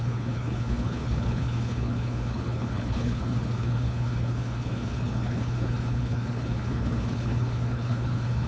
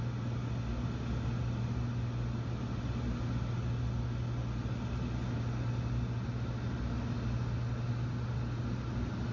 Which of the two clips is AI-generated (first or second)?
first